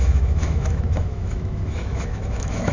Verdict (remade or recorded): remade